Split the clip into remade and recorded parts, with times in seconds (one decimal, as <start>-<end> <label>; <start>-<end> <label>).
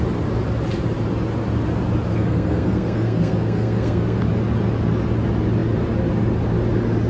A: 0.0-2.1 recorded; 2.1-4.2 remade; 4.2-7.1 recorded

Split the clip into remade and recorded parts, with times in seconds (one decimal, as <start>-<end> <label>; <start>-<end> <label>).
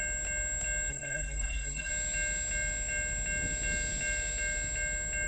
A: 0.0-0.9 recorded; 0.9-1.9 remade; 1.9-5.3 recorded